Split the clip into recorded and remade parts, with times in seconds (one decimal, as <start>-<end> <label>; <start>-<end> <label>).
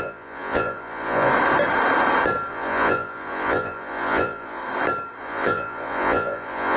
0.0-1.3 remade; 1.3-2.5 recorded; 2.5-4.6 remade; 4.6-5.2 recorded; 5.2-6.8 remade